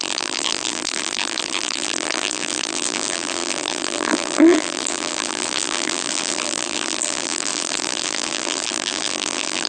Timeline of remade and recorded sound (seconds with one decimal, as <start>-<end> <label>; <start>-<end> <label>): 0.0-9.7 remade